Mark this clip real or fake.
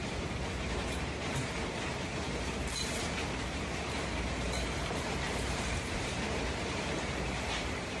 fake